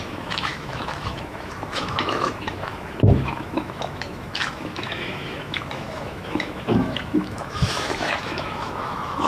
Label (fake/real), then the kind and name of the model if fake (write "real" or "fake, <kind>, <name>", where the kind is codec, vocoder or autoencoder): fake, autoencoder, DAC-VAE